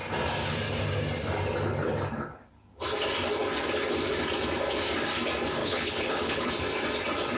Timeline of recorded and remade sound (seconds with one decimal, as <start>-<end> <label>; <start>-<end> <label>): 0.0-5.6 recorded; 5.6-6.5 remade; 6.5-7.4 recorded